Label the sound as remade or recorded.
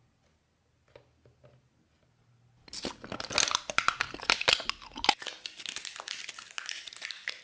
recorded